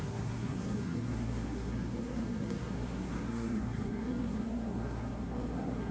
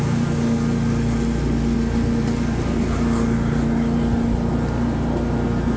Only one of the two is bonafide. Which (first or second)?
second